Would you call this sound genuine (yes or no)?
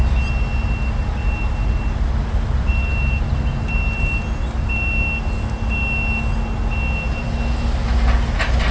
yes